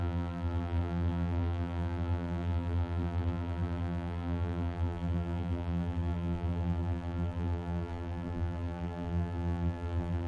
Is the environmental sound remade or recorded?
remade